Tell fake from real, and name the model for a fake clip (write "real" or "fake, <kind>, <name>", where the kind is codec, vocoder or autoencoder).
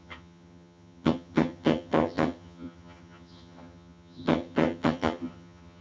fake, vocoder, HiFi-GAN